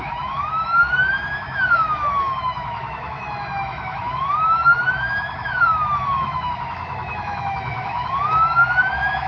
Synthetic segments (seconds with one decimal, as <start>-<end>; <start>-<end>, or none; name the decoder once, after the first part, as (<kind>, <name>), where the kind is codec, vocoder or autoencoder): 0.0-9.3 (autoencoder, DAC-VAE)